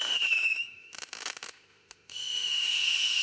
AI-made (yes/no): yes